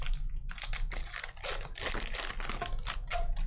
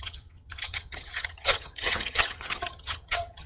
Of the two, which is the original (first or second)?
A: first